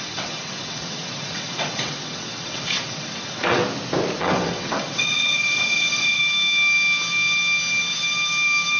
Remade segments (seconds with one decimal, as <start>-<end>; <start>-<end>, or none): 0.0-3.6; 4.2-6.2